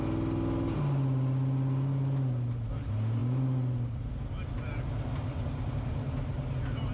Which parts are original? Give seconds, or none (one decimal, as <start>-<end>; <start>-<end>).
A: 0.0-6.9

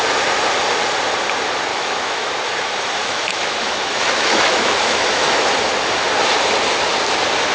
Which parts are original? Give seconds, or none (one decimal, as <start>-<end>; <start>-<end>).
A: 0.0-1.7; 2.3-3.0; 5.5-7.5

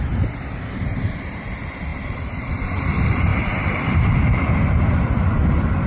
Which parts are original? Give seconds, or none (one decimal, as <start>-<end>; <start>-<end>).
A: 0.0-3.3; 4.6-5.9